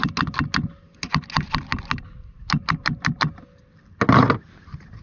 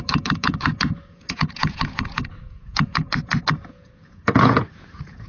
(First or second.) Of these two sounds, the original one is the first